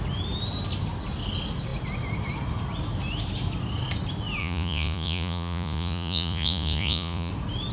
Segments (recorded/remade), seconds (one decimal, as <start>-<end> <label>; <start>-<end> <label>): 0.0-4.4 recorded; 4.4-7.3 remade; 7.3-7.7 recorded